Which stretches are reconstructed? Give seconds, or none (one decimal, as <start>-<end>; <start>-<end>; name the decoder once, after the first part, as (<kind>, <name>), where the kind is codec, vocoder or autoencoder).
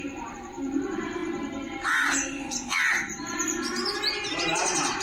0.0-1.2 (vocoder, BigVGAN v2); 4.1-5.0